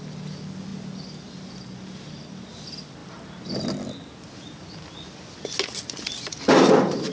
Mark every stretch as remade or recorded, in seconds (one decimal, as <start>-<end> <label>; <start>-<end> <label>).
0.0-7.1 recorded